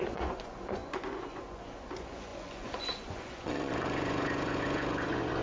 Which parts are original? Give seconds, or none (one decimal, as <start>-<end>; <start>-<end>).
none